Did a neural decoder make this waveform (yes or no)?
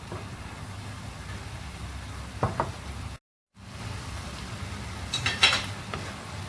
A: no